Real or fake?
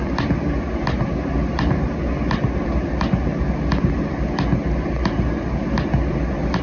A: real